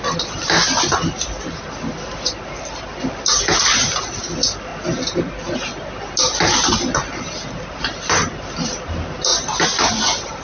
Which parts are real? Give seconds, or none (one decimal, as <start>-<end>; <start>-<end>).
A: 4.7-7.8; 9.3-10.0